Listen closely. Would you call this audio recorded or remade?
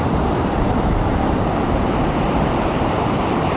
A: remade